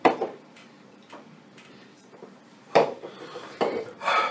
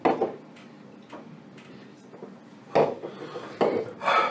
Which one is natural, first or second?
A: second